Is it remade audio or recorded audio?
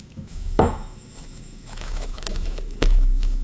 remade